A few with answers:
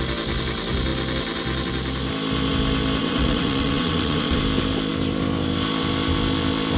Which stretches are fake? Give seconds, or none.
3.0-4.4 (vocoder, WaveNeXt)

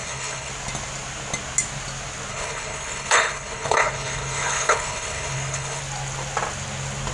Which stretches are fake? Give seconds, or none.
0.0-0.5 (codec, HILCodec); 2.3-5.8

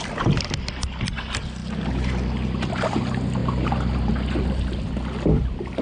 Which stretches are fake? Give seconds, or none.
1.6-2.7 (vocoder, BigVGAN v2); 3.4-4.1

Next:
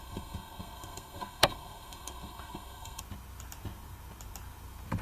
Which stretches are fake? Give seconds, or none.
0.0-3.0 (codec, SNAC)

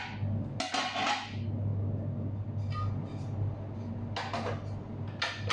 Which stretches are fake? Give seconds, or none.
none

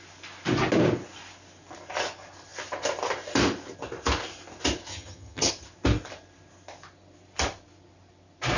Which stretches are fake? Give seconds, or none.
4.9-5.5 (vocoder, HiFi-GAN)

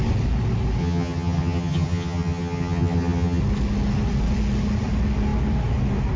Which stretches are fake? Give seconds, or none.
0.8-3.4 (vocoder, HiFi-GAN)